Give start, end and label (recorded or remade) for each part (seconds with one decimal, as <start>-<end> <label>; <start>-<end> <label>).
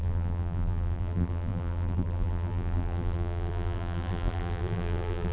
0.0-5.3 remade